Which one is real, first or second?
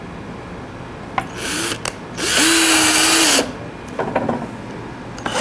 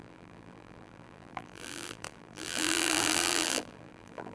first